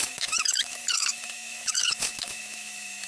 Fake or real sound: fake